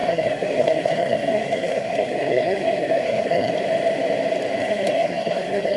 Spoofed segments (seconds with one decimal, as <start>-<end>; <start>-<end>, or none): 0.0-3.5; 4.6-5.8